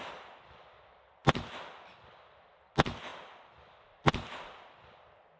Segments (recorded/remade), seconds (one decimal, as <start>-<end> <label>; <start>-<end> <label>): 0.0-5.4 recorded